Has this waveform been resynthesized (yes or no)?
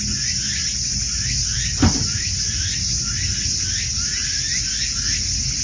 no